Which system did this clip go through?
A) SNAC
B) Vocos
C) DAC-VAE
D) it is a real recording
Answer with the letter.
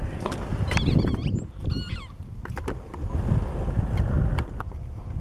D